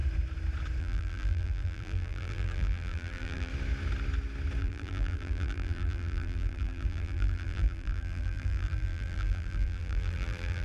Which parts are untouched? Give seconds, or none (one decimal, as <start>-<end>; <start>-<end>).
0.0-0.8; 3.5-4.6